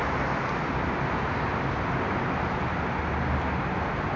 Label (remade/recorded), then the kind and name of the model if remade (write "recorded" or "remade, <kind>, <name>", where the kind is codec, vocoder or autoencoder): recorded